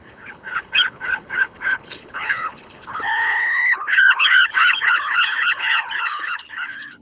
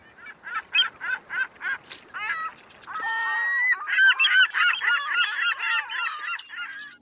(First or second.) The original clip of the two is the second